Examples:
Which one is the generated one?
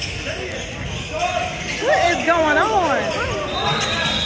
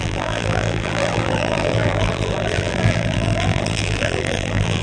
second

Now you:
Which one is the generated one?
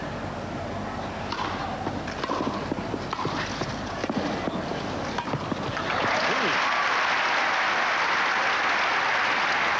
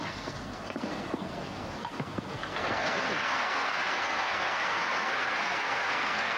second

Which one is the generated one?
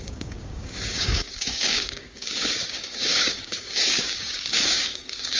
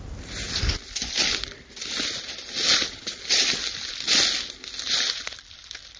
first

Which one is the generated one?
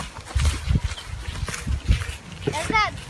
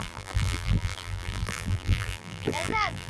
second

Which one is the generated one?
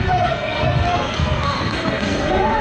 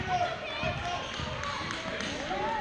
first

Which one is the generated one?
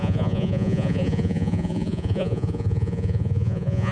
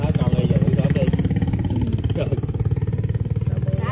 first